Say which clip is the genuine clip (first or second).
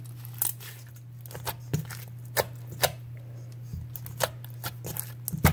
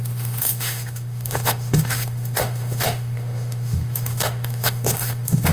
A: first